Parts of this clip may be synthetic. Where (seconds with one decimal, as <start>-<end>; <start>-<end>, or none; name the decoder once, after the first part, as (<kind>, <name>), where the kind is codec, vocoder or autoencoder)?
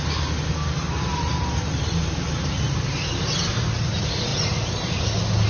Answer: 1.1-3.6 (vocoder, BigVGAN v2); 4.3-5.0